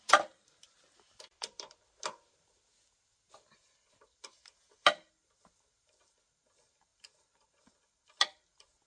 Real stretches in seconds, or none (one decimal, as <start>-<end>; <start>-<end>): 0.0-8.9